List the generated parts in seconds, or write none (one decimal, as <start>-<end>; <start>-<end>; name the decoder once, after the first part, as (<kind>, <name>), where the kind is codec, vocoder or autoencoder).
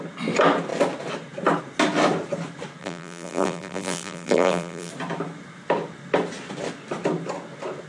2.8-4.9 (vocoder, BigVGAN v2)